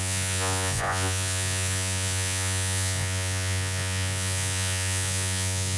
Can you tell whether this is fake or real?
fake